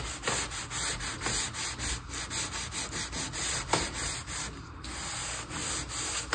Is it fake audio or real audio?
real